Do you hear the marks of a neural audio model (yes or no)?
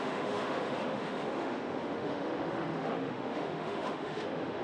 yes